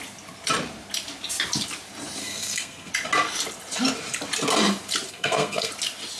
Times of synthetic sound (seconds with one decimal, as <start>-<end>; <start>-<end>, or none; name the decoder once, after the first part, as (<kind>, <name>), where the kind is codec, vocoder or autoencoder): 2.2-2.9 (codec, SNAC); 5.1-5.7